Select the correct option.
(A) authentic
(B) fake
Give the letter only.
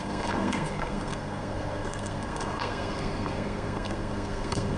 B